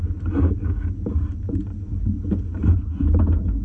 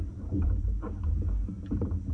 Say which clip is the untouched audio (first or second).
first